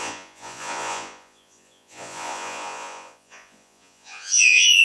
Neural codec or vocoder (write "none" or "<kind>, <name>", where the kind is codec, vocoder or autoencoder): vocoder, Vocos